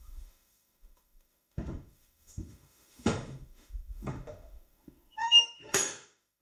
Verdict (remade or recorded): remade